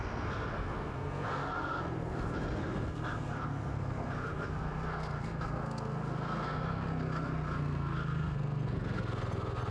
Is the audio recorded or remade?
remade